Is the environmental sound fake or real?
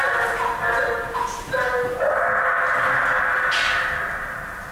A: real